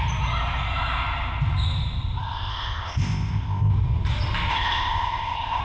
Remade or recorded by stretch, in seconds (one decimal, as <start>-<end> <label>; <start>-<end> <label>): 0.0-2.2 recorded; 2.2-3.7 remade; 3.7-4.5 recorded; 4.5-5.6 remade